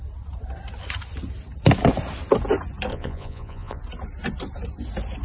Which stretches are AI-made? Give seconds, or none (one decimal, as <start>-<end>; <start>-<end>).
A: 2.9-3.8